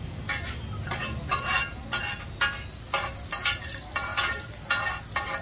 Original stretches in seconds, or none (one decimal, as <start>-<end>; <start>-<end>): 0.0-5.4

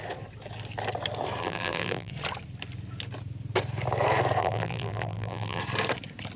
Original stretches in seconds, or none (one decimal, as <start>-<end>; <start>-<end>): 0.0-1.4; 2.1-4.4; 5.6-6.4